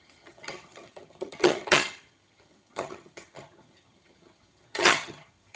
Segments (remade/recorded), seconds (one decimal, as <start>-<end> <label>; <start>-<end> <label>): 0.0-5.6 remade